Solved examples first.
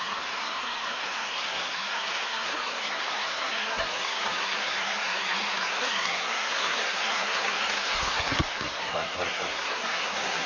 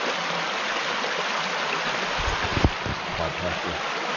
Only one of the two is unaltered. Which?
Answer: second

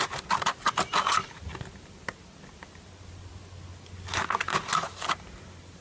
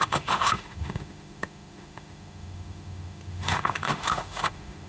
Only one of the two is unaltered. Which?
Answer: first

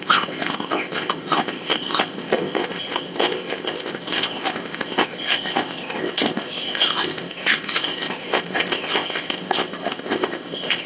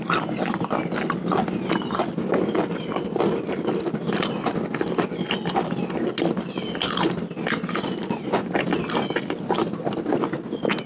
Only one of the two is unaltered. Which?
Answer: second